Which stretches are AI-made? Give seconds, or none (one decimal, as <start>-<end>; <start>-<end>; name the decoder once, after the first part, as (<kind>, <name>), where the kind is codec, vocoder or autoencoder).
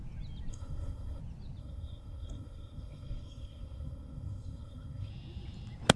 0.5-1.2 (codec, SNAC); 1.6-5.1